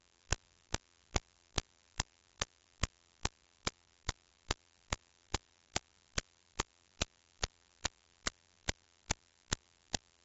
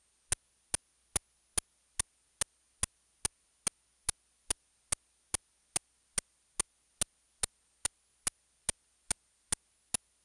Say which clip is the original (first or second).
second